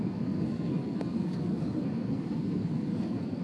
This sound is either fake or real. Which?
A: fake